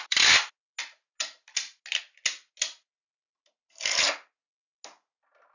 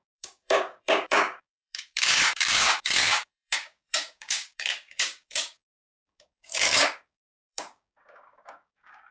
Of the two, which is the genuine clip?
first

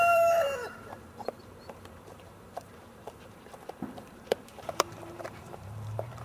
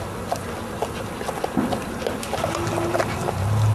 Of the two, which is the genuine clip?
second